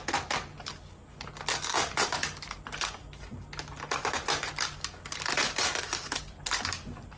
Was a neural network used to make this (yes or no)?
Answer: no